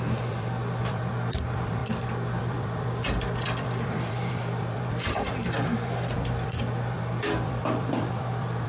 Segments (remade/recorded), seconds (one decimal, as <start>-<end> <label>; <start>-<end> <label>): 0.0-1.8 remade; 1.8-2.4 recorded; 2.4-8.7 remade